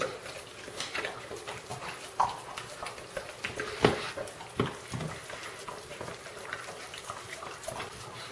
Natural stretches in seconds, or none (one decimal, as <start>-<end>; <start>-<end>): 1.7-6.1